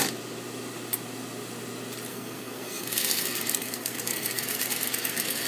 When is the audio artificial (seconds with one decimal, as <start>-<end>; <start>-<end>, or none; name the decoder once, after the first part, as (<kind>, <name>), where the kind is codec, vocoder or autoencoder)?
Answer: 2.1-5.5 (codec, SNAC)